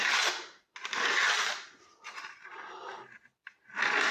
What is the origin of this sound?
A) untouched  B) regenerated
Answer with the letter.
A